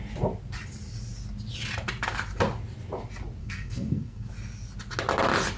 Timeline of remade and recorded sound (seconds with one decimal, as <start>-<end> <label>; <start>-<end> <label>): 0.0-3.4 recorded; 3.4-4.3 remade; 4.3-5.6 recorded